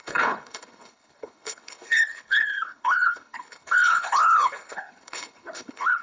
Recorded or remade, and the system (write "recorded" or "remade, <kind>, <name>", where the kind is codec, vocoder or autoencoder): remade, codec, HILCodec